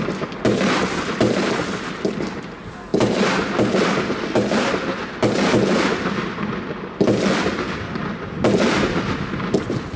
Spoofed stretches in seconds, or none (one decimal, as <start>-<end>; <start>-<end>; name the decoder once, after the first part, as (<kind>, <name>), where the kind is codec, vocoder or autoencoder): none